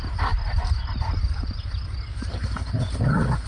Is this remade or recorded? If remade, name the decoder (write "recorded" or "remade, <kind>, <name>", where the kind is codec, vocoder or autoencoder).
recorded